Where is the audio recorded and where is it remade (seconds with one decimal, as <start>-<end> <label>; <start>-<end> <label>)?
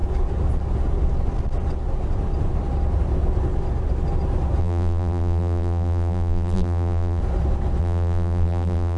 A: 0.0-4.6 recorded; 4.6-7.2 remade; 7.2-7.8 recorded; 7.8-9.0 remade